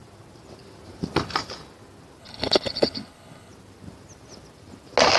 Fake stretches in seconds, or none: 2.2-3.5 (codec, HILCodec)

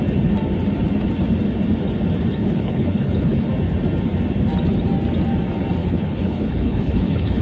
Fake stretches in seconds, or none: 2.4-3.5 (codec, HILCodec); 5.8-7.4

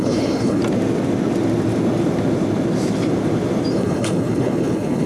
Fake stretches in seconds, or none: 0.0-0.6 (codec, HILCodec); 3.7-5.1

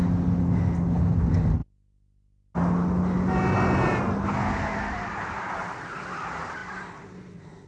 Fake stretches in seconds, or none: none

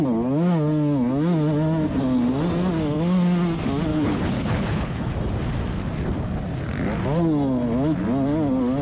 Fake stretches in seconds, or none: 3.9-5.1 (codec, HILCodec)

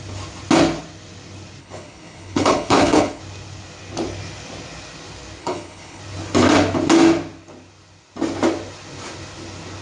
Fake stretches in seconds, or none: 1.6-3.2 (codec, HILCodec); 5.4-6.0

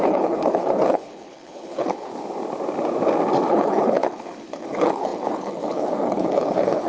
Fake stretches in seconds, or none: 0.0-2.1 (codec, HILCodec); 3.5-6.9